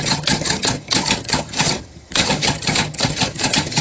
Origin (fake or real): fake